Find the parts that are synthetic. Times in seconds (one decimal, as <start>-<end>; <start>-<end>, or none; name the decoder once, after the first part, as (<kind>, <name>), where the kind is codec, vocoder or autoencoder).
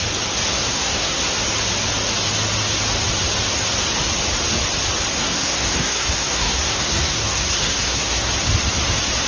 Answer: 0.5-1.3 (codec, SNAC); 5.1-8.3